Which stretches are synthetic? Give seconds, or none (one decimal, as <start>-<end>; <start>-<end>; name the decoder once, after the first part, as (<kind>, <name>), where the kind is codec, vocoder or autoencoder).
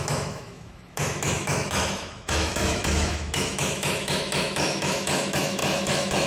0.0-6.3 (autoencoder, DAC-VAE)